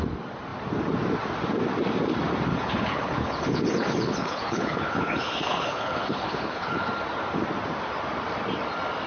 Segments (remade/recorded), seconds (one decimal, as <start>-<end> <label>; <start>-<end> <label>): 0.0-2.5 recorded; 2.5-6.9 remade; 6.9-9.1 recorded